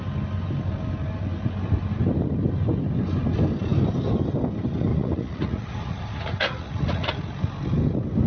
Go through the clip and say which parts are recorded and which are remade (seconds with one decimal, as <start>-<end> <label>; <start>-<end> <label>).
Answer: 0.0-4.9 recorded; 4.9-7.1 remade; 7.1-8.3 recorded